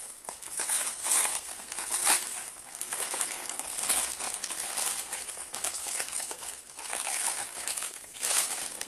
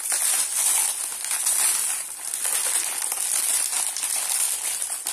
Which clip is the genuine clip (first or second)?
second